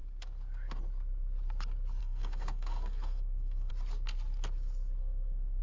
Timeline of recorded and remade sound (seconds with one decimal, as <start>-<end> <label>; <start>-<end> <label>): 0.0-2.0 recorded; 2.0-3.7 remade; 3.7-5.0 recorded; 5.0-5.6 remade